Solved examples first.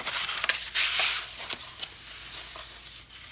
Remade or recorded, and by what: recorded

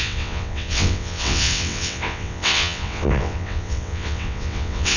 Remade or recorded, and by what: remade, vocoder, WaveNeXt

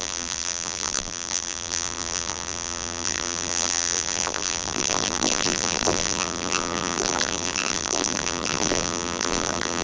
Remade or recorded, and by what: remade, vocoder, BigVGAN v2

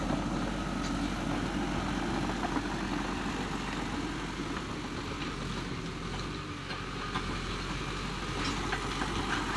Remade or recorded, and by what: recorded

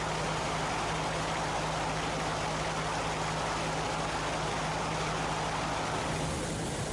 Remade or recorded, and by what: recorded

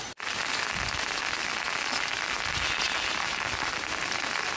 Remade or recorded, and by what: recorded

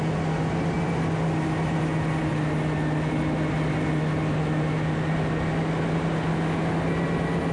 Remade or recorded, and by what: recorded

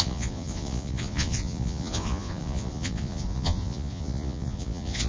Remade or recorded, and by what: remade, vocoder, Vocos